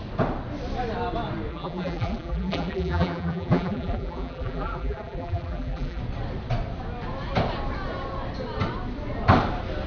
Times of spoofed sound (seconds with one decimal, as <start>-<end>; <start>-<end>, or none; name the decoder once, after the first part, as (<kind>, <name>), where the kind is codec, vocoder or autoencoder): 1.5-6.0 (vocoder, BigVGAN v2)